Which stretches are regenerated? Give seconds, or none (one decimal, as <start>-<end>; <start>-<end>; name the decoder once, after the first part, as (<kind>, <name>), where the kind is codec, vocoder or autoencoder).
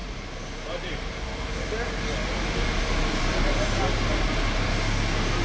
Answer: none